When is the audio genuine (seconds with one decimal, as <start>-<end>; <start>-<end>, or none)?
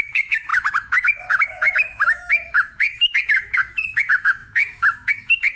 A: none